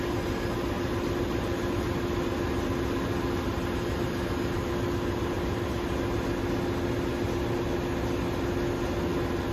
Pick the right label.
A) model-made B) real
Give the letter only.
B